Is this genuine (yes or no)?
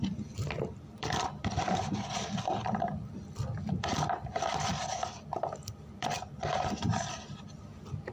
no